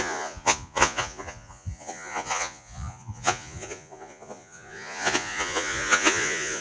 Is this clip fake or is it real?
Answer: fake